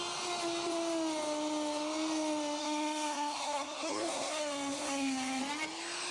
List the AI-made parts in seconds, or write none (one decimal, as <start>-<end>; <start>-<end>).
2.6-5.4

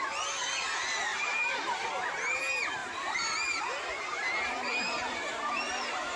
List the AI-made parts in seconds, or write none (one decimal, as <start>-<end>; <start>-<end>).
1.1-2.4; 2.8-3.6